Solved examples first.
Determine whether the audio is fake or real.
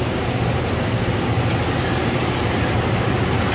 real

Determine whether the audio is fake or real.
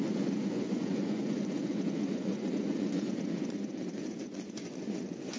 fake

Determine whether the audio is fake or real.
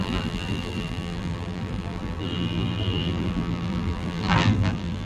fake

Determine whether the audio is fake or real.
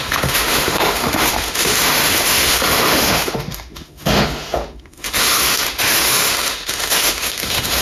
fake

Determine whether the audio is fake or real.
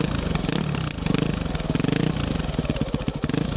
real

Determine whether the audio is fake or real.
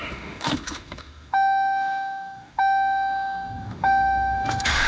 fake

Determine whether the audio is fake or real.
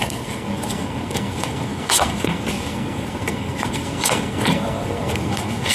fake